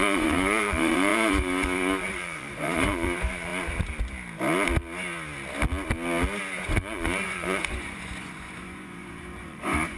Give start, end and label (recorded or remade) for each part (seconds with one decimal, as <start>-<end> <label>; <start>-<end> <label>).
0.0-3.5 remade; 3.5-6.6 recorded; 6.6-10.0 remade